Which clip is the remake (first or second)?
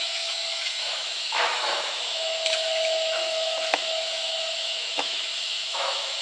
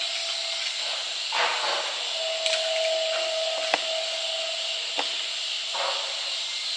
first